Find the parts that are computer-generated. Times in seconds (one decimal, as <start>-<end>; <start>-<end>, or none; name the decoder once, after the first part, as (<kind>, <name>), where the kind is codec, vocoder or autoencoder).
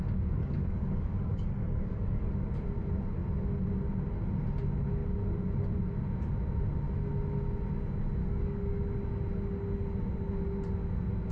0.4-2.3 (codec, DAC); 8.2-8.7